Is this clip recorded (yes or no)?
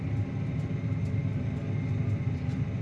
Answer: yes